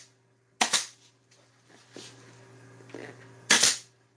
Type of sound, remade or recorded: recorded